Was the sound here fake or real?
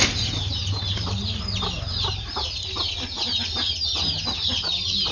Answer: real